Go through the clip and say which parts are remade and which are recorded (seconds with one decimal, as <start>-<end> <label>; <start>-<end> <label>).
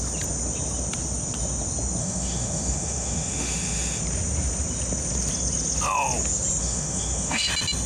0.0-2.0 recorded; 2.0-4.0 remade; 4.0-6.6 recorded; 6.6-7.5 remade; 7.5-7.9 recorded